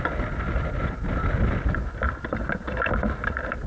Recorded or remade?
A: recorded